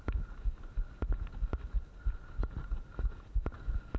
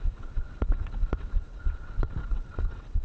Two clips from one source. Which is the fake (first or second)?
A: second